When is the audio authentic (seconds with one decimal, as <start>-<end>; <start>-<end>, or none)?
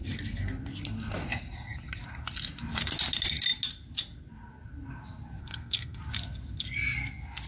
0.0-5.4; 6.0-7.5